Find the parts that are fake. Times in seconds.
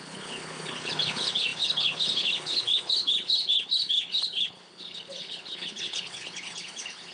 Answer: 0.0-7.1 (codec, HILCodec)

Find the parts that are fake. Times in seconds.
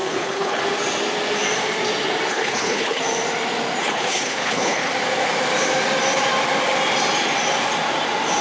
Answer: 0.0-0.6 (codec, HILCodec); 2.3-3.0; 3.8-4.9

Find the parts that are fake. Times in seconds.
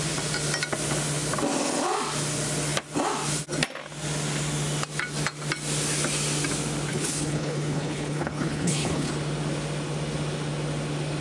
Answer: 6.9-9.1 (codec, HILCodec)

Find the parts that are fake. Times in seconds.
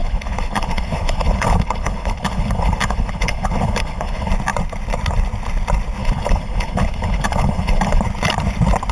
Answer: 0.0-4.3 (codec, HILCodec); 6.0-8.0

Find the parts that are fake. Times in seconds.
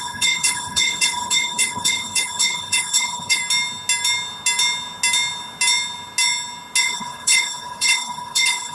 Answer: 0.0-3.4 (codec, HILCodec); 6.8-8.7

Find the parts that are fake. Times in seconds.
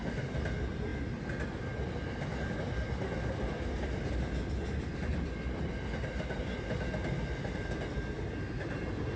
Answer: none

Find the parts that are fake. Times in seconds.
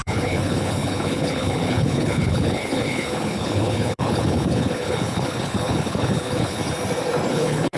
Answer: 0.0-6.6 (codec, HILCodec); 7.3-7.8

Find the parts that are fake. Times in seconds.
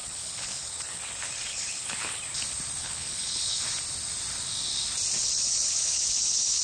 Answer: 0.0-1.0 (codec, HILCodec); 1.5-2.2; 2.8-3.6; 5.2-6.6